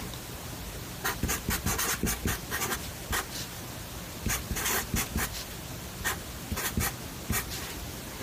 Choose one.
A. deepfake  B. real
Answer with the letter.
B